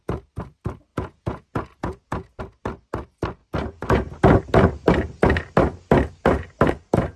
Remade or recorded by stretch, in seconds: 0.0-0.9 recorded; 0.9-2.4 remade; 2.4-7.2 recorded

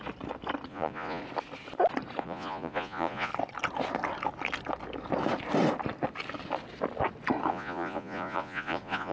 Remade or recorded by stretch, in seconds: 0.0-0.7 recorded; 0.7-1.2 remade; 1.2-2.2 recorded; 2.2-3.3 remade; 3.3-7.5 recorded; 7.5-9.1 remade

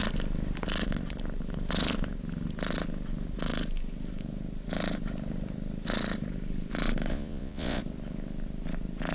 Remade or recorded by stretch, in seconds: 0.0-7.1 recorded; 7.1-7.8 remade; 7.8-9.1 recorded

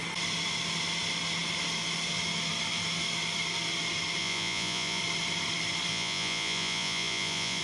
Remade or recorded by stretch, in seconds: 0.0-4.2 recorded; 4.2-5.0 remade; 5.0-5.9 recorded; 5.9-7.6 remade

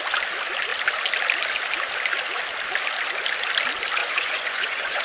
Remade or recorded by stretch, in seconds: 0.0-4.0 recorded; 4.0-5.0 remade

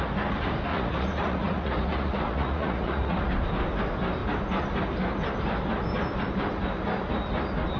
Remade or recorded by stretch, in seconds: 0.0-0.7 recorded; 0.7-3.3 remade; 3.3-7.8 recorded

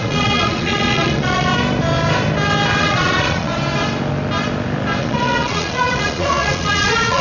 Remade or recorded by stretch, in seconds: 0.0-1.5 remade; 1.5-2.8 recorded; 2.8-3.5 remade; 3.5-5.0 recorded; 5.0-7.2 remade